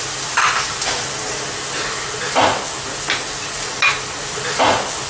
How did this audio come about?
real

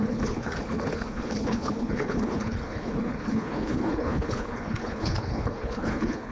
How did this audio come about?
fake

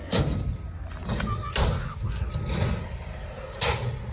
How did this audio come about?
real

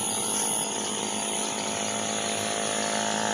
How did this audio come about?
real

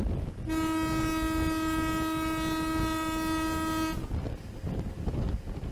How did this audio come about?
real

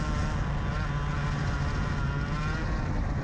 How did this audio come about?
real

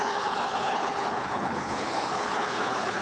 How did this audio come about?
fake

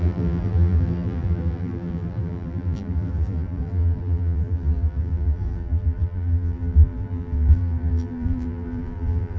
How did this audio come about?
fake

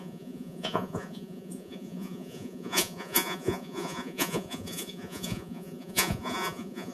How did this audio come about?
fake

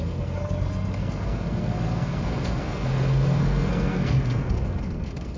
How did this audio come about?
fake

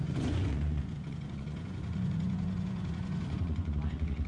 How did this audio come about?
fake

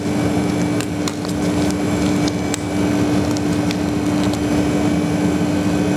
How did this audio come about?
real